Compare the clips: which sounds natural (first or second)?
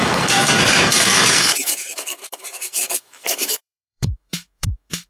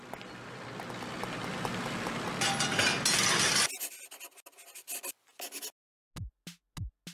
second